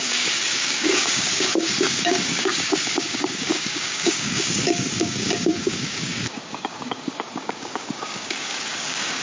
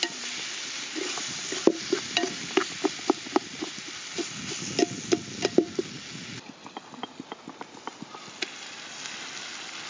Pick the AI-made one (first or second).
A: first